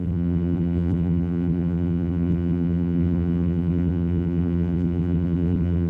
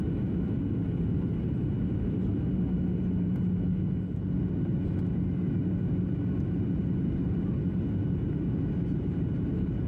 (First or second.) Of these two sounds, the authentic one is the second